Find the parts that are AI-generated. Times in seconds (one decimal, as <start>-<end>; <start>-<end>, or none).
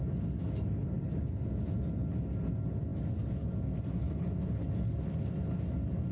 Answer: none